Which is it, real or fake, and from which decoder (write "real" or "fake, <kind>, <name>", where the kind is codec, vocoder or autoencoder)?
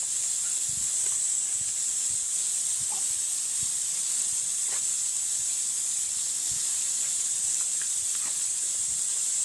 real